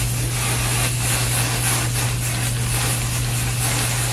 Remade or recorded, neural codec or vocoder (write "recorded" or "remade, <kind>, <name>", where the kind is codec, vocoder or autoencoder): recorded